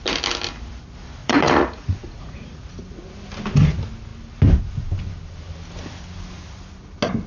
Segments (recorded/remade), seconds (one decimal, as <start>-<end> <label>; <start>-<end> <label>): 0.0-1.2 recorded; 1.2-2.7 remade; 2.7-7.3 recorded